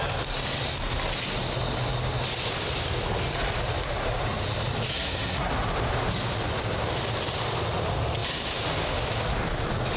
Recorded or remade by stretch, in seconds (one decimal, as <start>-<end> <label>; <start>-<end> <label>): 0.0-4.9 recorded; 4.9-5.5 remade; 5.5-10.0 recorded